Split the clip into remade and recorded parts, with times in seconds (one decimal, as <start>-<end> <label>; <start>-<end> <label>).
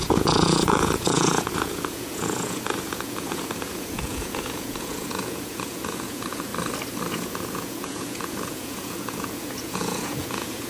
0.0-6.5 remade; 6.5-7.1 recorded; 7.1-10.7 remade